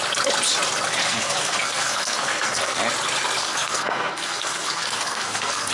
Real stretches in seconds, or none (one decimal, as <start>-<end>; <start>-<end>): 0.0-1.0; 2.8-3.4